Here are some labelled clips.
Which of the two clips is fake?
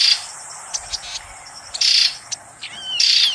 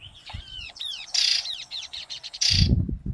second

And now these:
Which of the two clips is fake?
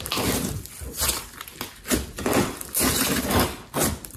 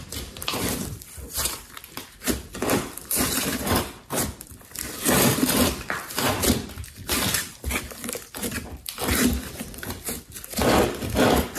second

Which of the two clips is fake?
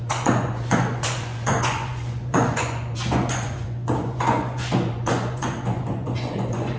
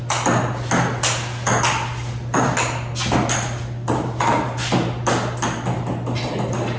first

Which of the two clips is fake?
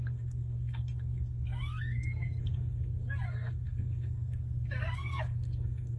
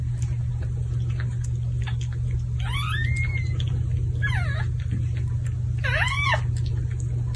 first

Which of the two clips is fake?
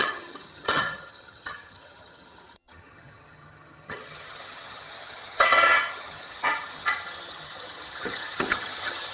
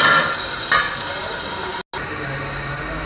first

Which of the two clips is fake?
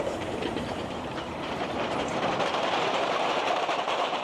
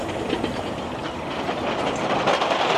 first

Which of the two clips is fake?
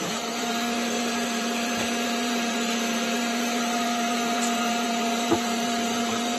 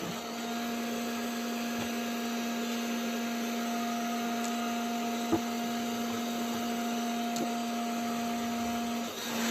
first